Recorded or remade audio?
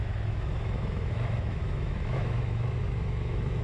remade